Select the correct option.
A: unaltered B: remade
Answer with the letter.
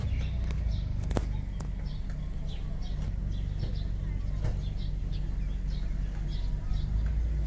A